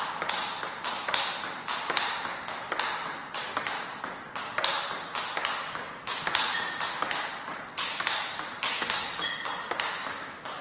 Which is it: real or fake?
real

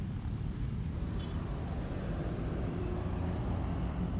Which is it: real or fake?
fake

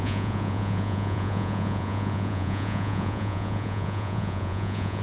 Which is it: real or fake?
fake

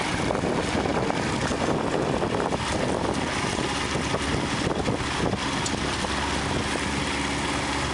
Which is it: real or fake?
real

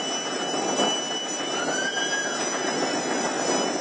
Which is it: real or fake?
real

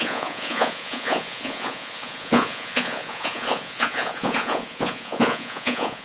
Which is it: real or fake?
fake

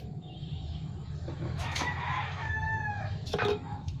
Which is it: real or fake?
fake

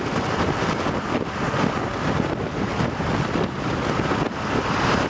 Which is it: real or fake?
real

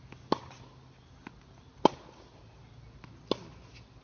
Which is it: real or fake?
real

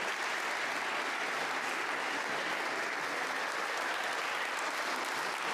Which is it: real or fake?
real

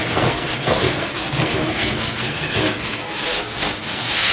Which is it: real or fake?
fake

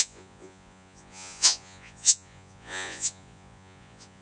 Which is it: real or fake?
fake